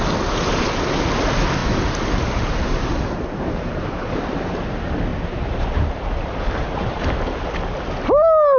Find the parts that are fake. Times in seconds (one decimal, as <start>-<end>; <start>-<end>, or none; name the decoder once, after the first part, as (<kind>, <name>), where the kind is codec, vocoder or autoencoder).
1.6-4.5 (vocoder, BigVGAN v2); 5.1-7.4

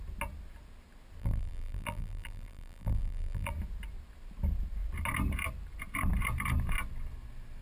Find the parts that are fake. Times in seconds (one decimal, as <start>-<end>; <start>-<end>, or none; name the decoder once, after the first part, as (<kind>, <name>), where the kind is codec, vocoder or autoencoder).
1.2-3.5 (vocoder, BigVGAN v2)

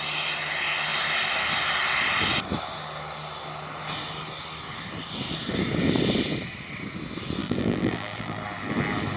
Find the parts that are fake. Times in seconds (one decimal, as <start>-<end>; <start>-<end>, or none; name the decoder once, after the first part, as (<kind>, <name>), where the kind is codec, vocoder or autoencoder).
7.4-8.4 (vocoder, BigVGAN v2)

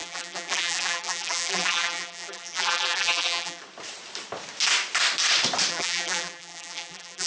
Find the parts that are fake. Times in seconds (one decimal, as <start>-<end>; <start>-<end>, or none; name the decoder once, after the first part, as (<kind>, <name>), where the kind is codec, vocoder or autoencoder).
0.0-3.6 (vocoder, BigVGAN v2); 5.7-7.3

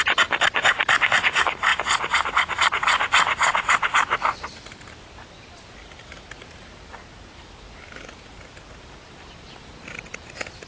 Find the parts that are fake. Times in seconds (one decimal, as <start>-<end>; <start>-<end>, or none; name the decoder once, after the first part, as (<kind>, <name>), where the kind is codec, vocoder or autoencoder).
0.0-1.7 (vocoder, BigVGAN v2); 2.3-10.7

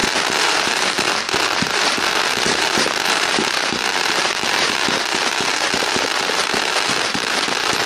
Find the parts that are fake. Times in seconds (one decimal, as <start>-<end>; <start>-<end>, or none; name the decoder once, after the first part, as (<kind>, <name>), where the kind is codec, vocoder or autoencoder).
0.0-4.7 (vocoder, BigVGAN v2)